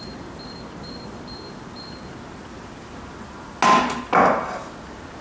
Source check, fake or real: real